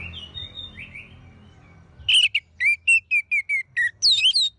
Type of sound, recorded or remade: recorded